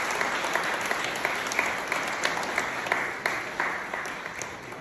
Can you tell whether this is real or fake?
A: real